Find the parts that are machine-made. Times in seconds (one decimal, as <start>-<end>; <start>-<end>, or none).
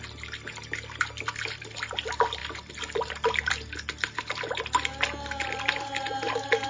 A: none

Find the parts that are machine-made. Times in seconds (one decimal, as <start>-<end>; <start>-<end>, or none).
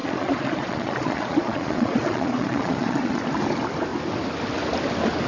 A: 0.0-3.2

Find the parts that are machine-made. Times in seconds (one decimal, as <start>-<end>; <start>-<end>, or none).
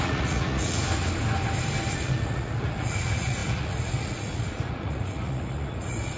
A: 0.0-0.8; 1.9-6.2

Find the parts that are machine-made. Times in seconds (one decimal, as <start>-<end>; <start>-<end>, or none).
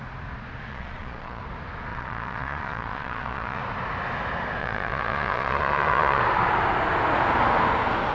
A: 0.7-1.4; 1.9-3.6; 4.6-6.2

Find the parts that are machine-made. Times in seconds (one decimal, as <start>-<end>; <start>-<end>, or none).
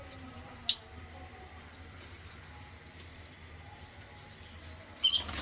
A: none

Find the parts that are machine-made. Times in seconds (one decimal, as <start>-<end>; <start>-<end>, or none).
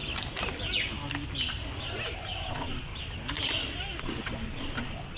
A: 2.5-2.9; 4.0-5.2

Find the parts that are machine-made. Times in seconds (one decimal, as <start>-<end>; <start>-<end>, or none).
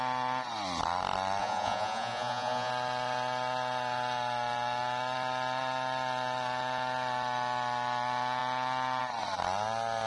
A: 1.4-2.7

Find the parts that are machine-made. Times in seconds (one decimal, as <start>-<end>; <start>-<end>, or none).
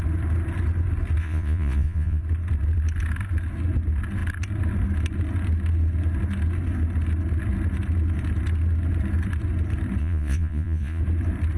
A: 1.2-2.2; 10.0-11.0